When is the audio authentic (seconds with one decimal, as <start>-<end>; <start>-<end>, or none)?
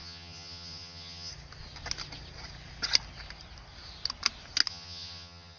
1.3-4.7